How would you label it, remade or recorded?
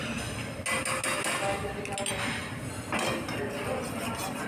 recorded